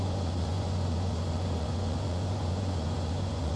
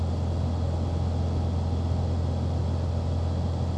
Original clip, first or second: second